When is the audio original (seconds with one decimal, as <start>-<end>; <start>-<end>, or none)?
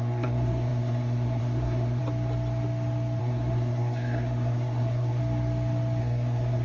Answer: 2.0-3.2; 5.2-6.0